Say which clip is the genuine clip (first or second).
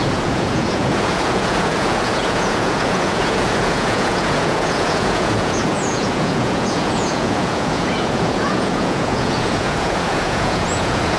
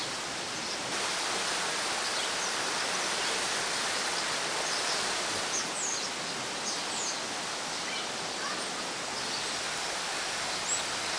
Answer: second